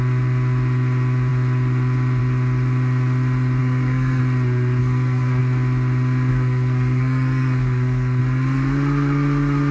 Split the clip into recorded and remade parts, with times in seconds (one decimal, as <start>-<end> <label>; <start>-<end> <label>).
0.0-3.6 recorded; 3.6-4.2 remade; 4.2-4.8 recorded; 4.8-5.4 remade; 5.4-6.3 recorded; 6.3-8.2 remade; 8.2-9.7 recorded